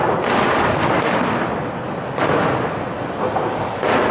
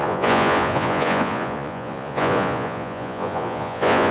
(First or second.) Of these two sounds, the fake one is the second